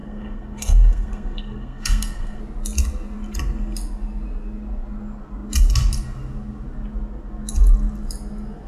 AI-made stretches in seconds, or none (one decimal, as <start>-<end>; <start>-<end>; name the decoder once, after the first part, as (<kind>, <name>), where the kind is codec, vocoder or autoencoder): 0.0-2.4 (codec, SNAC)